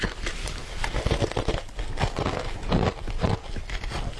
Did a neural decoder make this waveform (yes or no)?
no